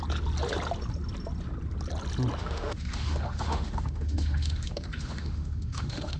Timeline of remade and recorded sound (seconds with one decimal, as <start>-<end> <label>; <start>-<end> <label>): 0.0-2.4 recorded; 2.4-6.2 remade